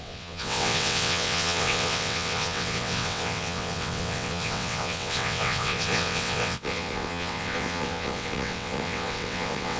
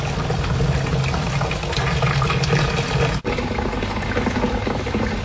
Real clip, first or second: second